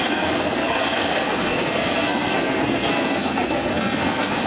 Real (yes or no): no